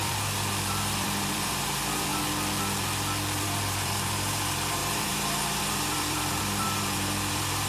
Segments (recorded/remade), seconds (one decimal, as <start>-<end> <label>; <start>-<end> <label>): 0.0-2.1 remade; 2.1-3.4 recorded; 3.4-7.7 remade